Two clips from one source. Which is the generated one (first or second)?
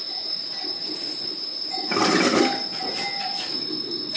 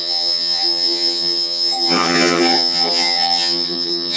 second